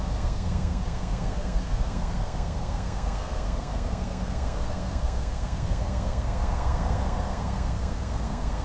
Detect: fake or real fake